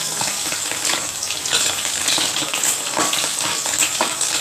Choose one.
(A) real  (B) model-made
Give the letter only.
B